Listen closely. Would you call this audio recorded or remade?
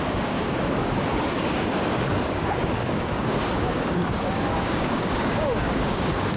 remade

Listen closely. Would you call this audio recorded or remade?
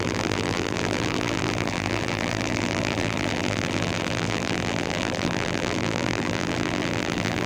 remade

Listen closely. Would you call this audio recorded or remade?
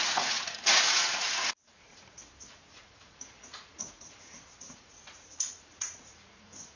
remade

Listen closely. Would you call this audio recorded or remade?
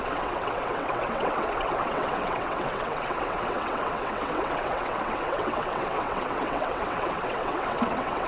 remade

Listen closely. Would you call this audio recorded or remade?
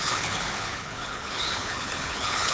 remade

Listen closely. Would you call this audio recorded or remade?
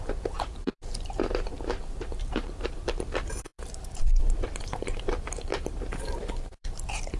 remade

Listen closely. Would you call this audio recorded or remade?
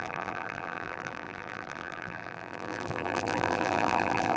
remade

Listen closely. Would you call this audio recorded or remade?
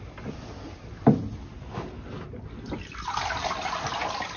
recorded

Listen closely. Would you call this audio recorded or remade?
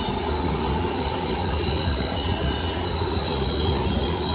remade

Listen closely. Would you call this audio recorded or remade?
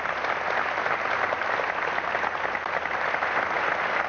recorded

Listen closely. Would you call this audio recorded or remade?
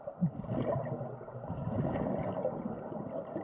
recorded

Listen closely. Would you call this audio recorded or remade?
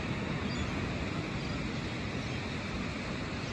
recorded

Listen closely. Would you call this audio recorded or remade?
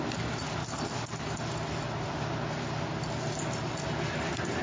recorded